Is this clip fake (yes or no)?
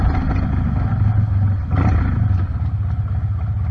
no